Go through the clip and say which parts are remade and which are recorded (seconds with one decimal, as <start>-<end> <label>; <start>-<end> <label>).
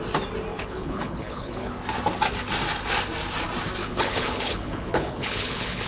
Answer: 0.0-0.5 recorded; 0.5-1.7 remade; 1.7-3.8 recorded; 3.8-5.9 remade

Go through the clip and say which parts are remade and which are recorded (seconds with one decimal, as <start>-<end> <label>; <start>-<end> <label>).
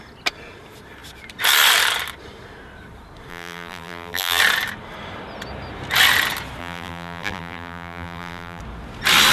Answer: 0.0-3.3 recorded; 3.3-4.4 remade; 4.4-6.6 recorded; 6.6-8.6 remade; 8.6-9.3 recorded